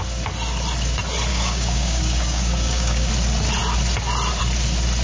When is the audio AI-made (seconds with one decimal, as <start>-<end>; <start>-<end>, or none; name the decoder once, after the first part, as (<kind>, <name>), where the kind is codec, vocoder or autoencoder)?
1.3-3.1 (codec, DAC)